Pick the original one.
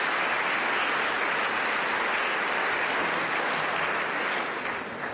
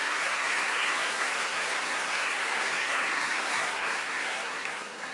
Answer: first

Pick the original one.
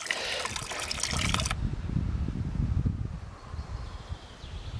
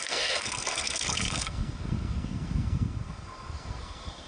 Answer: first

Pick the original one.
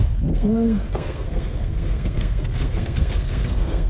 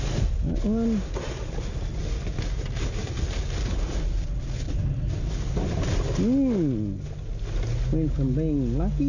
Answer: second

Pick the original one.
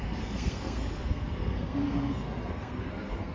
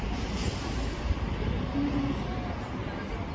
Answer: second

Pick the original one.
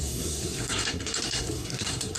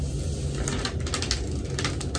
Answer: second